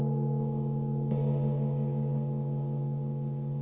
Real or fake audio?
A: fake